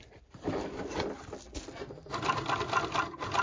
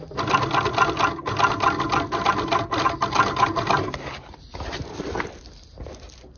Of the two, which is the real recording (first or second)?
second